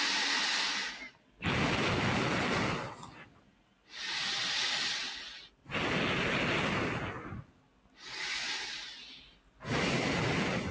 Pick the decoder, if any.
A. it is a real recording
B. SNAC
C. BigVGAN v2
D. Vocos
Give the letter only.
A